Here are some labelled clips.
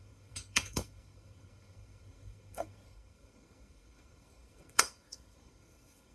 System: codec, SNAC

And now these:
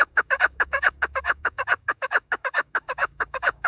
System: codec, DAC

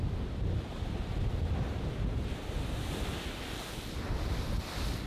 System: none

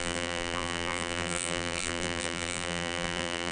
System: vocoder, BigVGAN v2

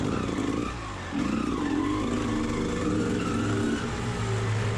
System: none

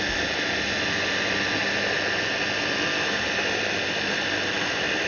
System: none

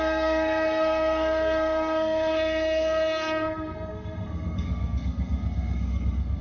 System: codec, SNAC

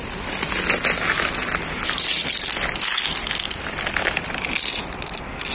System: none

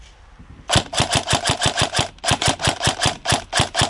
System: none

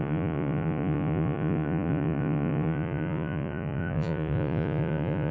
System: vocoder, Vocos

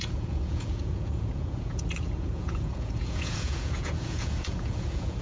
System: vocoder, Vocos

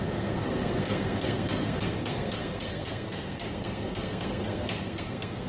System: codec, SNAC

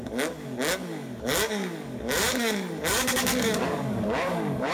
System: codec, DAC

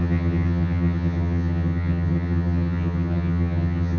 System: vocoder, HiFi-GAN